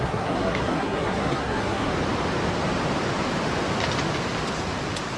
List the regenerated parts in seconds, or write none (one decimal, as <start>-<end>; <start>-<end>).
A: 0.0-1.9